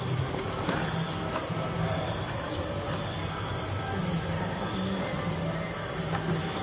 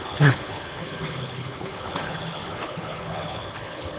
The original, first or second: first